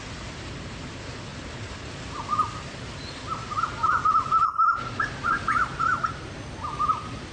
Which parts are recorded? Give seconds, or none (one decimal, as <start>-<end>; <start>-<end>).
0.0-1.3; 2.2-3.8; 6.3-7.3